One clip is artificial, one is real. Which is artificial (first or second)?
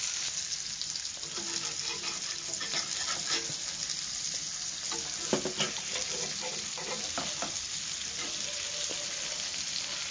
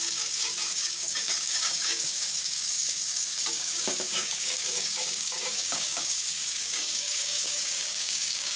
second